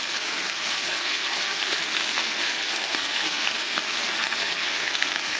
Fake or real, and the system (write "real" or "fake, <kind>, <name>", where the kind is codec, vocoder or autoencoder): fake, codec, SNAC